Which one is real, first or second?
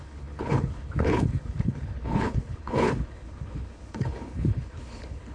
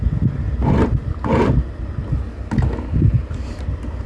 second